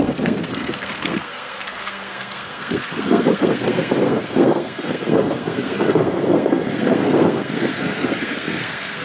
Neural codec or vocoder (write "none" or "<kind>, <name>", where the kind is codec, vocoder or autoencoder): codec, SNAC